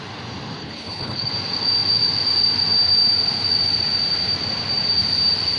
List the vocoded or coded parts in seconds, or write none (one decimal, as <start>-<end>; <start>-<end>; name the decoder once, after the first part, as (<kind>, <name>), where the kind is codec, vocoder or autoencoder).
0.6-1.3 (codec, HILCodec)